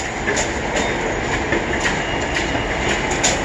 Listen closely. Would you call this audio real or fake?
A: real